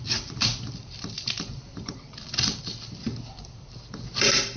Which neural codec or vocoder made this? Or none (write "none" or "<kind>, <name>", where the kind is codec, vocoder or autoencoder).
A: vocoder, BigVGAN v2